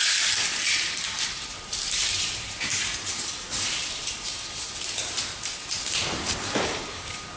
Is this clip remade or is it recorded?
remade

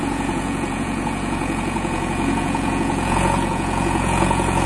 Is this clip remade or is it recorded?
remade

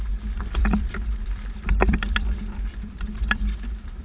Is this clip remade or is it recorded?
remade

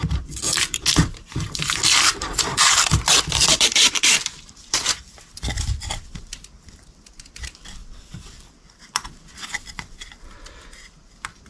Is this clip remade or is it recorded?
remade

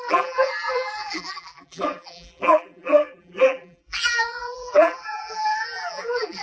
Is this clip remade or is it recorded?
remade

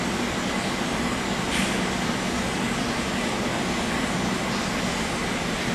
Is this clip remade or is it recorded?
recorded